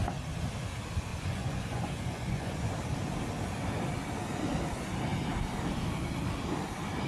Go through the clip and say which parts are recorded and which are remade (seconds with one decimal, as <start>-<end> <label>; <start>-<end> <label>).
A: 0.0-1.1 recorded; 1.1-2.7 remade; 2.7-7.1 recorded